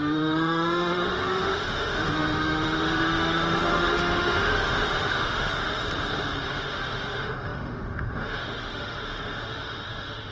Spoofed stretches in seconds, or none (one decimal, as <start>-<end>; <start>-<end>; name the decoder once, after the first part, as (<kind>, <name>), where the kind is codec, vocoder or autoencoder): 0.0-5.8 (autoencoder, DAC-VAE); 6.5-10.3